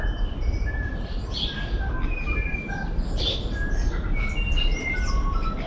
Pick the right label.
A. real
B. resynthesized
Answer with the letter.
A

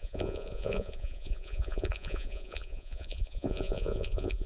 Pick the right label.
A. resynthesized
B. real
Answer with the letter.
A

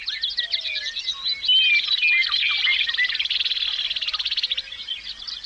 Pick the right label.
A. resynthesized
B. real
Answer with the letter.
B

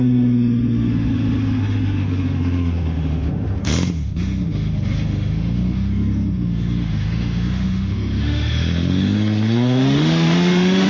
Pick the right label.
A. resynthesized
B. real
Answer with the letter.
A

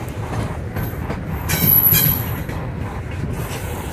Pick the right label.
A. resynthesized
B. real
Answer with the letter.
B